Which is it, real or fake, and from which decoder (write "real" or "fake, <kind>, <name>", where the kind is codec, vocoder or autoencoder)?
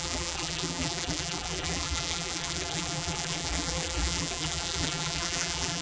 fake, vocoder, BigVGAN v2